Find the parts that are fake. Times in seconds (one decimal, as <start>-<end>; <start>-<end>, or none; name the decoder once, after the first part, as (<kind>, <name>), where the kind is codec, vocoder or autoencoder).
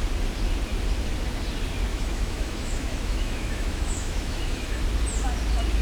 1.9-4.8 (autoencoder, DAC-VAE)